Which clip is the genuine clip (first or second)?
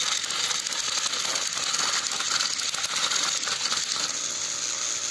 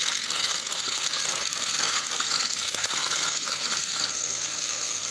first